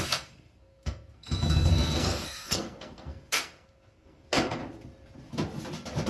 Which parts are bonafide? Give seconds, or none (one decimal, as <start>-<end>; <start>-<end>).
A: 4.6-6.1